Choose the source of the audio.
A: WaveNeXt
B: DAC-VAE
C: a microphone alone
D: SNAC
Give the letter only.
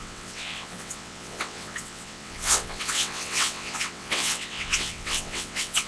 A